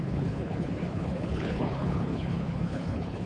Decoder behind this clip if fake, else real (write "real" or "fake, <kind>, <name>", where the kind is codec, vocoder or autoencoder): fake, codec, HILCodec